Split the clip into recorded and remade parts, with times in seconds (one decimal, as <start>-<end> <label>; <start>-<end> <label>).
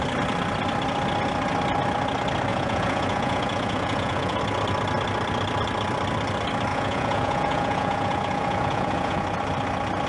0.0-2.5 recorded; 2.5-4.4 remade; 4.4-6.7 recorded; 6.7-9.2 remade; 9.2-10.1 recorded